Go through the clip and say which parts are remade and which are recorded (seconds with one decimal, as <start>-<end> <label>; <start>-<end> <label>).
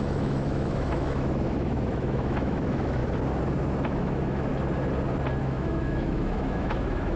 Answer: 0.0-3.0 remade; 3.0-3.9 recorded; 3.9-4.5 remade; 4.5-5.4 recorded; 5.4-7.2 remade